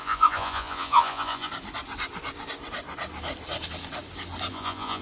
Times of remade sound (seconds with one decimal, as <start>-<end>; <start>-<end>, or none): 0.0-1.5; 4.5-5.0